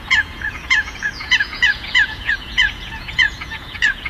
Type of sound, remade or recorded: remade